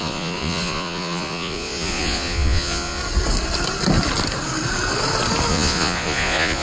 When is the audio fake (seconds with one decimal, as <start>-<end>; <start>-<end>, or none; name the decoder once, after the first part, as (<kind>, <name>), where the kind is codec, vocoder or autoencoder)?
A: 0.0-3.0 (vocoder, Vocos); 5.5-6.6